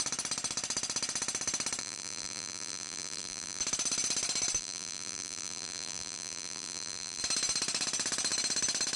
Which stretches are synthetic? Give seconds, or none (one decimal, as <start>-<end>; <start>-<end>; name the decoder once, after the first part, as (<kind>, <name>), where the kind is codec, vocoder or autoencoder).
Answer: 1.8-3.6 (vocoder, BigVGAN v2); 4.6-7.2